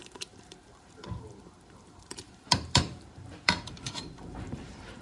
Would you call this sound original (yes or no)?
no